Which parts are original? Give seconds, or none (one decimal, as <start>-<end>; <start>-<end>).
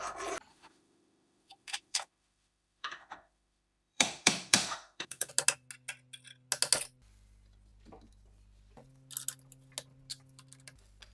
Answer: 0.0-0.5; 5.3-11.1